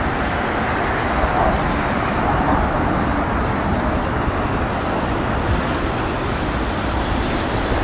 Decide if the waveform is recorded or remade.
recorded